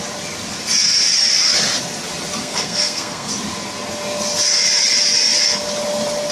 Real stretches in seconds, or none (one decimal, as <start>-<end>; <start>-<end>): 0.0-2.4; 3.3-6.3